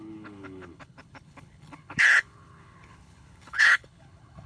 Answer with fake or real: fake